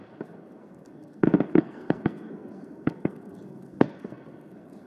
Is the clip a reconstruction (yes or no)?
yes